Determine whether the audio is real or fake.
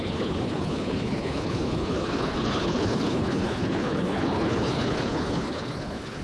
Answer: fake